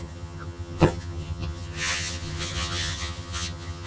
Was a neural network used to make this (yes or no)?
yes